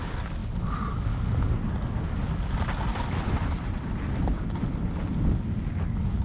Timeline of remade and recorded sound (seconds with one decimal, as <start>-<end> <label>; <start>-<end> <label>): 0.0-6.2 recorded